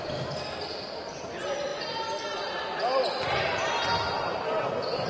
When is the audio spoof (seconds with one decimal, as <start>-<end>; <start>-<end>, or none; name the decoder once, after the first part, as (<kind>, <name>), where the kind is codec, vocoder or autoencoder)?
none